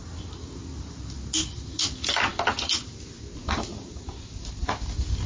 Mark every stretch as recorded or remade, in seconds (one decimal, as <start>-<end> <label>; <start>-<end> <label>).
0.0-5.3 recorded